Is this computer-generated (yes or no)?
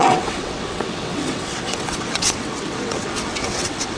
yes